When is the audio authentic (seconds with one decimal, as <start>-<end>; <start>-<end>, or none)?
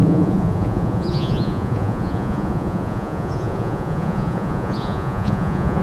none